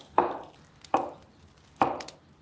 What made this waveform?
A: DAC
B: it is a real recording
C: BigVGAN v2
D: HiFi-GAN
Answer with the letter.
B